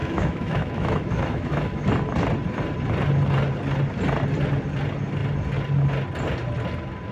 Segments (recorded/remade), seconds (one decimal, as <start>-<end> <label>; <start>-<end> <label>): 0.0-1.9 remade; 1.9-7.1 recorded